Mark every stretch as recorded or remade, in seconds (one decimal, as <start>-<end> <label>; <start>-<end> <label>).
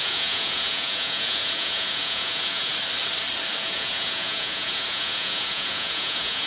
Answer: 0.0-2.7 remade; 2.7-3.6 recorded; 3.6-6.5 remade